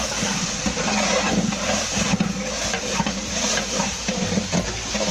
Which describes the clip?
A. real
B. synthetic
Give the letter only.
B